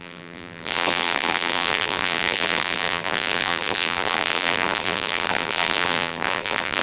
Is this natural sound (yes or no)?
no